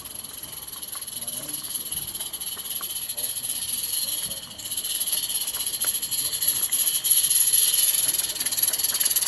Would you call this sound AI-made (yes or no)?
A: no